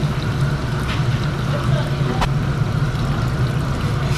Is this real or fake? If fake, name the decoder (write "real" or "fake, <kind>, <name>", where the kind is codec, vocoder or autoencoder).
real